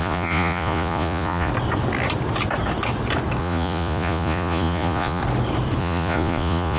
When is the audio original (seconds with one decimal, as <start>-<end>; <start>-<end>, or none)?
1.5-3.4; 5.2-5.8